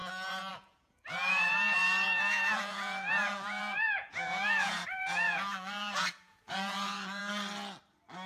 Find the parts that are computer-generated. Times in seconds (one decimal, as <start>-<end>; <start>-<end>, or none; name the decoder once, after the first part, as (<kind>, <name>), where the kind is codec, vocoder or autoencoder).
0.5-7.2 (vocoder, Vocos)